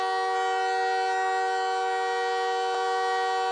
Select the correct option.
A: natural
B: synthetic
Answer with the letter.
A